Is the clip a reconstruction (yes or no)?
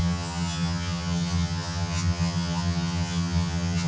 yes